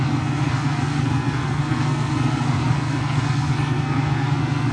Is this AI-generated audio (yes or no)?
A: yes